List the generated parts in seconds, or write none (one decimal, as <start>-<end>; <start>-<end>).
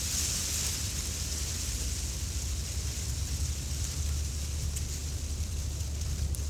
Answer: 5.0-5.8